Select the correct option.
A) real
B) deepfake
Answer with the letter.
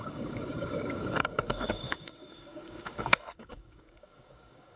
B